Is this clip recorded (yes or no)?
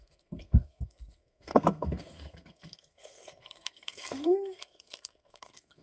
no